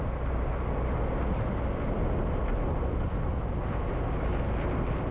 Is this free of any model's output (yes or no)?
yes